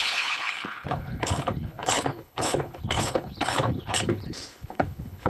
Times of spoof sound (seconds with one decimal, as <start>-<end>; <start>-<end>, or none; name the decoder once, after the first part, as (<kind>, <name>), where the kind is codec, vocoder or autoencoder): 0.0-5.3 (codec, HILCodec)